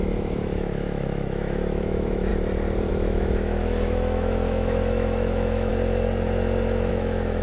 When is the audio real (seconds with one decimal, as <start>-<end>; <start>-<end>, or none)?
2.3-2.9; 5.7-6.9

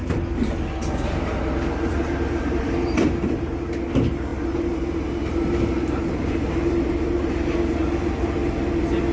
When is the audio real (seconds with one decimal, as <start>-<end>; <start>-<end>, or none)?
0.0-1.9; 3.5-4.3; 8.7-9.1

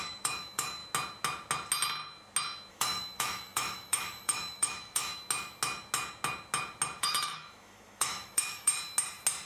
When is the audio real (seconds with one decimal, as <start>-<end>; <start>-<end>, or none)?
0.8-2.7; 5.1-7.0; 8.7-9.5